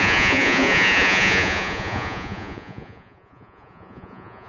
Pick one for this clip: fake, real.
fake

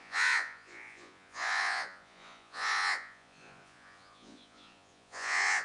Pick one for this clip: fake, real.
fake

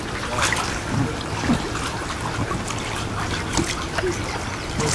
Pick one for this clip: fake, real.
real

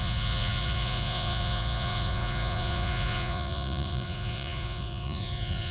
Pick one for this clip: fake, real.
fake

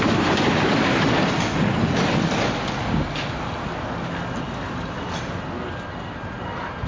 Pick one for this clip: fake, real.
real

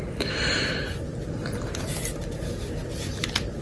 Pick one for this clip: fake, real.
real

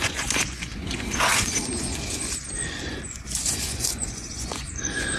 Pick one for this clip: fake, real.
fake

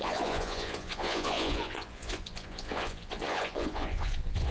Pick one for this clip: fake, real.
fake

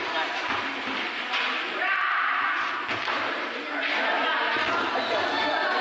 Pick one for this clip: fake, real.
real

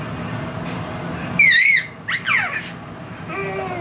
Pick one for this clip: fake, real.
real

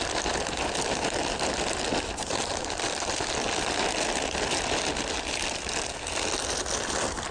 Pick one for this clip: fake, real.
real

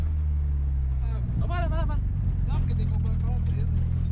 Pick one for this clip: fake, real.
real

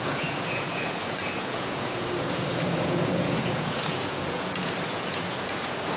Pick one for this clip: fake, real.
fake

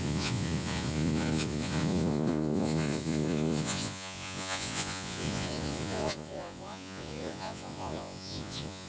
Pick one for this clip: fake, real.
fake